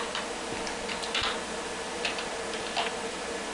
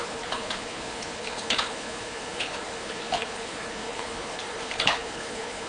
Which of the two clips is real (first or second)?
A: first